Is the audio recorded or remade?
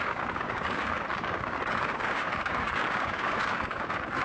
remade